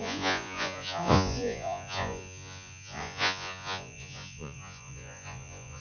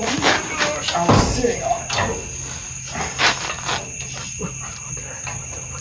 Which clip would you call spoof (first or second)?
first